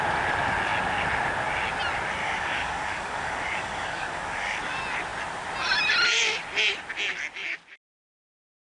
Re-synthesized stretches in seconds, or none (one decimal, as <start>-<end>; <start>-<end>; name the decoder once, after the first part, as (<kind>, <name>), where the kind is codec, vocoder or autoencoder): 2.2-4.6 (codec, DAC)